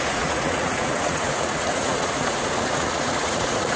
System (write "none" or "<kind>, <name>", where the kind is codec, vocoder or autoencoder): vocoder, Vocos